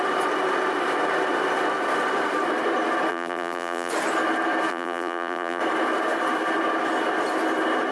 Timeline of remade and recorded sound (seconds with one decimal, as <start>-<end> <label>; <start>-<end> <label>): 0.0-3.1 recorded; 3.1-3.9 remade; 3.9-4.7 recorded; 4.7-5.6 remade; 5.6-7.9 recorded